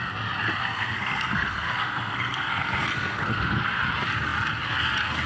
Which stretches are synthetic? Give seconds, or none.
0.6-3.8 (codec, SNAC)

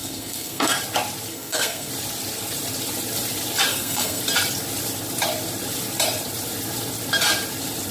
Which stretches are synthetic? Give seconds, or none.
0.0-0.8 (codec, SNAC); 1.3-1.9; 3.7-4.2

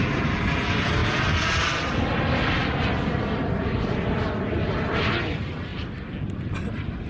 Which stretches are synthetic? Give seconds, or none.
none

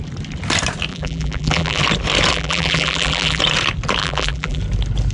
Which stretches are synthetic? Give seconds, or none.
0.9-1.8 (vocoder, BigVGAN v2); 2.3-3.4; 4.0-4.6

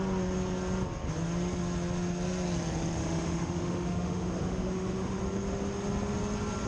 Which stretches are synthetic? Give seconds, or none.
3.0-5.2 (autoencoder, DAC-VAE)

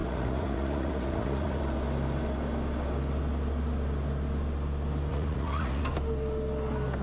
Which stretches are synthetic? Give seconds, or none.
0.0-1.6 (vocoder, Vocos); 5.1-5.8

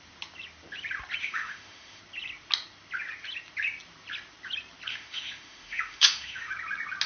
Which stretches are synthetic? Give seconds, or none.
1.2-2.0 (autoencoder, DAC-VAE); 4.9-6.5